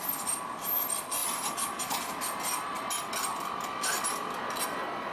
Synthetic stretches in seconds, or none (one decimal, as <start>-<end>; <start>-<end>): none